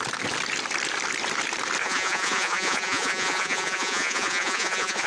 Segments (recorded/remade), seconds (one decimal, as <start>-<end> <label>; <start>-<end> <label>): 0.0-1.8 recorded; 1.8-5.1 remade